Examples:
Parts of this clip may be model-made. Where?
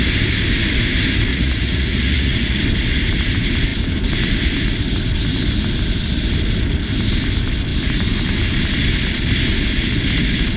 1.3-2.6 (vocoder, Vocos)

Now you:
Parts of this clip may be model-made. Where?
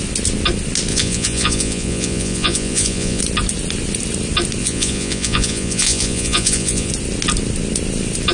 0.9-3.2 (vocoder, Vocos); 4.6-6.9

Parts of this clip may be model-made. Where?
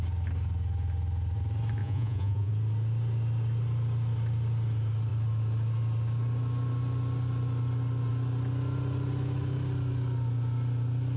1.8-2.5 (vocoder, Vocos)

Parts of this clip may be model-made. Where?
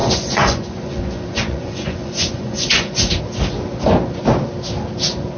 0.0-3.2 (vocoder, Vocos)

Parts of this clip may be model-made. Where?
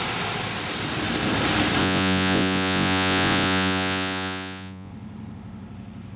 1.8-4.9 (vocoder, Vocos)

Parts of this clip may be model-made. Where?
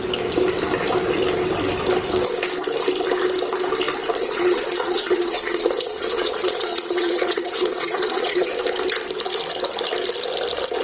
4.2-8.5 (vocoder, Vocos)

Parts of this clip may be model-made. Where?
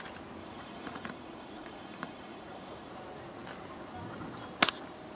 0.4-2.9 (vocoder, Vocos)